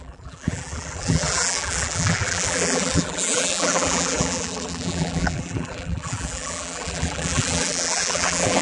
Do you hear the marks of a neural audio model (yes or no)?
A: yes